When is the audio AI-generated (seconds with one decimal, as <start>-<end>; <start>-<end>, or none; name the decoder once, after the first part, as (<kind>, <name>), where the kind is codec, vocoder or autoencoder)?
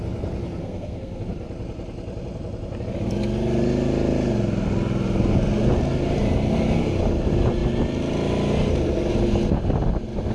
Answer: 0.6-1.2 (codec, SNAC)